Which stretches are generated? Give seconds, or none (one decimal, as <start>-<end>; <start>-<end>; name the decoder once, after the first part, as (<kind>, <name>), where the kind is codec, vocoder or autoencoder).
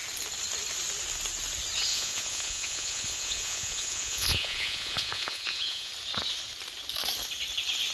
1.9-5.9 (vocoder, Vocos)